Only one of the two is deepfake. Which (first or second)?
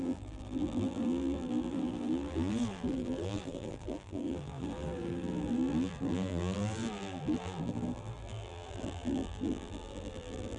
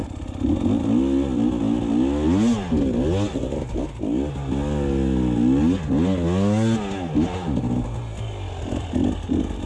first